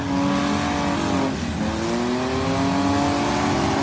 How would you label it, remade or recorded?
recorded